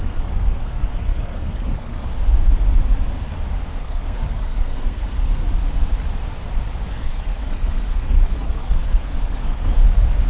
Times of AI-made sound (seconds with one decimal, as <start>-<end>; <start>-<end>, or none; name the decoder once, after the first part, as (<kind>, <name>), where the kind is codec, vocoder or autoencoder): 0.0-2.1 (codec, SNAC); 3.8-5.4; 6.9-9.8